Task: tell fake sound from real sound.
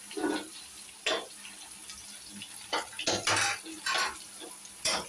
real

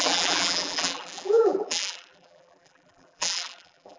fake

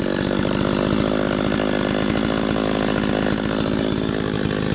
real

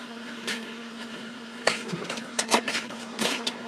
fake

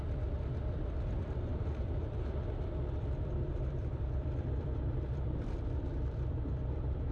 fake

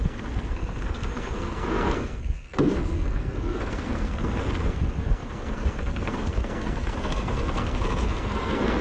fake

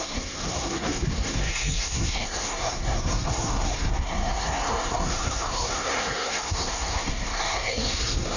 fake